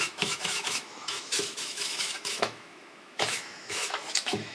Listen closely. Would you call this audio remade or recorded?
remade